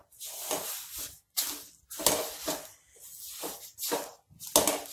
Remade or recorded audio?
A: recorded